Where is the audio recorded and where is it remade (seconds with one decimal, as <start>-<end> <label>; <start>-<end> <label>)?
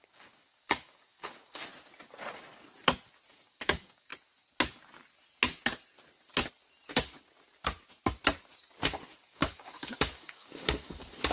0.0-1.7 remade; 1.7-3.3 recorded; 3.3-4.1 remade; 4.1-9.2 recorded; 9.2-11.3 remade